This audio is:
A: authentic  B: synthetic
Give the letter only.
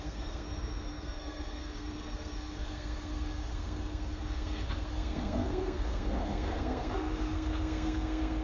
B